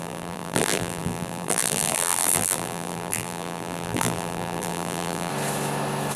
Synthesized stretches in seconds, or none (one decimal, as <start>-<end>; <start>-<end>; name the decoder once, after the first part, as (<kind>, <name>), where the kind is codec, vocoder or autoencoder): 0.0-5.3 (vocoder, BigVGAN v2)